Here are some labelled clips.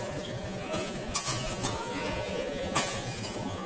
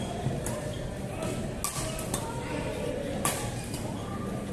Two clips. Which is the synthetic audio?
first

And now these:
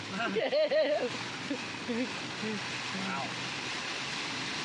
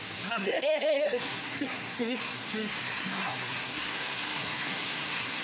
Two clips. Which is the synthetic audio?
second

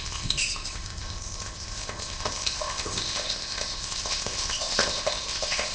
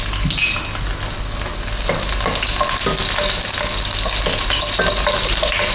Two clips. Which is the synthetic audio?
first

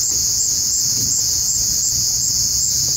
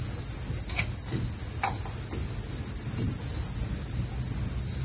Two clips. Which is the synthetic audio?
first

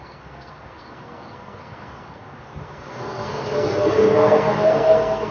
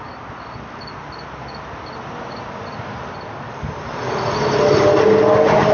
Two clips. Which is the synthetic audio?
first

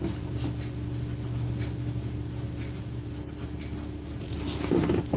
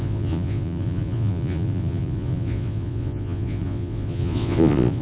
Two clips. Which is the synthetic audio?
second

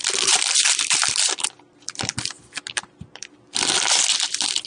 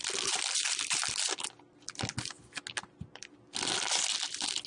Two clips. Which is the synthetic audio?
first